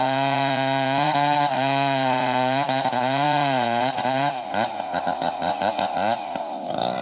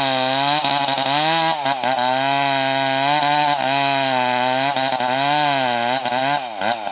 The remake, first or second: first